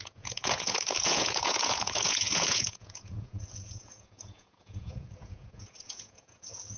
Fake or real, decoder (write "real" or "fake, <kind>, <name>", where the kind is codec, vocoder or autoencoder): fake, vocoder, Vocos